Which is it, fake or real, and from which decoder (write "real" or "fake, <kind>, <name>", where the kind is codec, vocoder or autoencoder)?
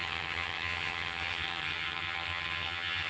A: fake, vocoder, HiFi-GAN